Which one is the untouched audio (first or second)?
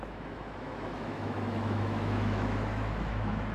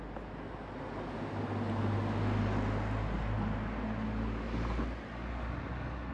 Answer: second